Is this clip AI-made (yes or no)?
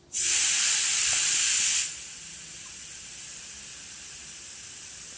no